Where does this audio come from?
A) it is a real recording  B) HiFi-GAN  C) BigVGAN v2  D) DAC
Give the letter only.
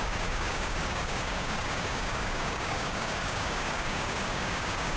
D